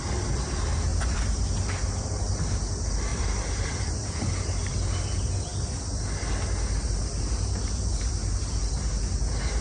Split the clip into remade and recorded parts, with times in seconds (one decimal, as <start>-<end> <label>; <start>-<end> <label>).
0.0-0.9 recorded; 0.9-1.7 remade; 1.7-3.1 recorded; 3.1-4.7 remade; 4.7-9.6 recorded